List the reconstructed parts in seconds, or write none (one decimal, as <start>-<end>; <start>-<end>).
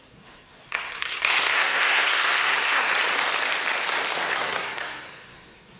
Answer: 0.0-2.9; 4.3-5.8